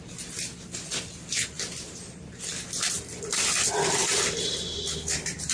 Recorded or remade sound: remade